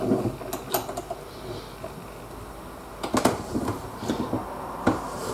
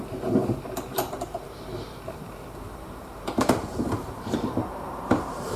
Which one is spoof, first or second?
second